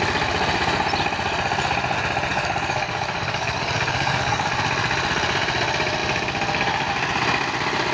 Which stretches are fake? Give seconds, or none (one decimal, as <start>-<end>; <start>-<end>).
2.3-4.5